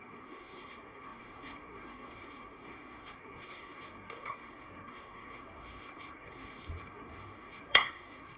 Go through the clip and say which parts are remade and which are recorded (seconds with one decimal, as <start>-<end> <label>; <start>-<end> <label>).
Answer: 0.0-8.4 remade

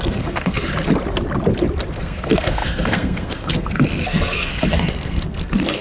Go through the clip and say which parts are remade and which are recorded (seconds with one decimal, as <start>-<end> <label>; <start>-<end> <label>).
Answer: 0.0-0.7 remade; 0.7-1.9 recorded; 1.9-5.8 remade

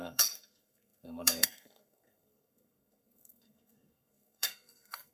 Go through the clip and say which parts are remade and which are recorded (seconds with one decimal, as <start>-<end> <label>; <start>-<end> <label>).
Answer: 0.0-5.1 remade

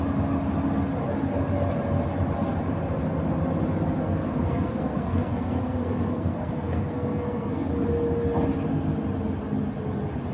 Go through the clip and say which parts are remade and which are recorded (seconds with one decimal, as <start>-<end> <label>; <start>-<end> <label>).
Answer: 0.0-4.0 recorded; 4.0-7.7 remade; 7.7-10.3 recorded

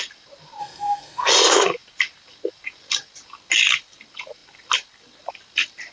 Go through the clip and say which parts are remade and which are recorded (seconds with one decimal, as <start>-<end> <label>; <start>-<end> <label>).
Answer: 0.0-0.6 recorded; 0.6-1.3 remade; 1.3-5.9 recorded